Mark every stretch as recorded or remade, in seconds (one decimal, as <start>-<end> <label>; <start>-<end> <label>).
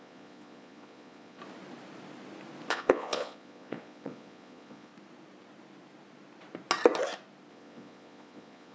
0.0-1.4 remade; 1.4-2.7 recorded; 2.7-4.9 remade; 4.9-7.5 recorded; 7.5-8.7 remade